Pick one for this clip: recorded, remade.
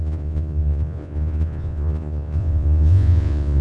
remade